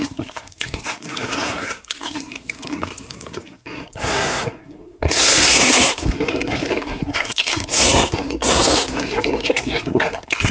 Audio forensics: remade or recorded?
remade